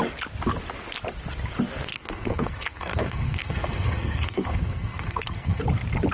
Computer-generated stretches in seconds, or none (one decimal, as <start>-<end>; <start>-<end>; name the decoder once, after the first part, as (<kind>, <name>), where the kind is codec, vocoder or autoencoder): 1.9-5.6 (codec, SNAC)